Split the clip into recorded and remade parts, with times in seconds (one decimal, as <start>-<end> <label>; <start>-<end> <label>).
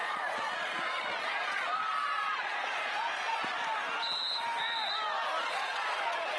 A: 0.0-3.4 remade; 3.4-5.4 recorded; 5.4-6.4 remade